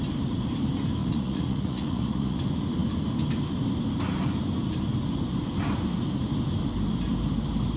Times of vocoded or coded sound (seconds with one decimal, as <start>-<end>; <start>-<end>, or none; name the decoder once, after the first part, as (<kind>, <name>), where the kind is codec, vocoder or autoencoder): 1.0-2.4 (vocoder, Vocos)